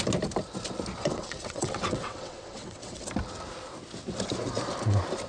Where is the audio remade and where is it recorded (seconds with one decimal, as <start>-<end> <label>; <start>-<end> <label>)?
0.0-1.0 recorded; 1.0-3.0 remade; 3.0-5.3 recorded